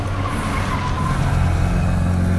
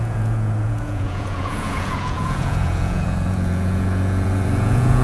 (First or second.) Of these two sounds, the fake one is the second